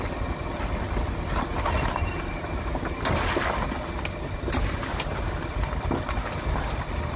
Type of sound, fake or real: real